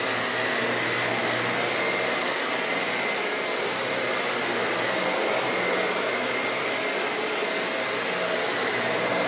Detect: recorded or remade recorded